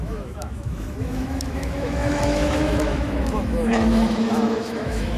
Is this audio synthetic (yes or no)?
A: yes